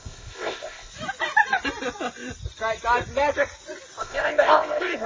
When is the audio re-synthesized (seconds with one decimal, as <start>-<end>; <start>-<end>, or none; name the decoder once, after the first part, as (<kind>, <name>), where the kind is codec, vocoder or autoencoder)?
0.0-0.9 (codec, ZipCodec); 4.0-5.1